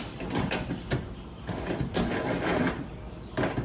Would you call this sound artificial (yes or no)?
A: no